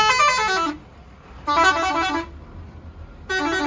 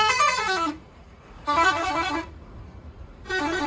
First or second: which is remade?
second